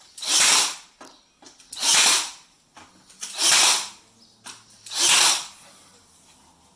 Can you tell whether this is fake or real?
real